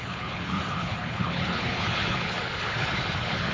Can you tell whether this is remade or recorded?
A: remade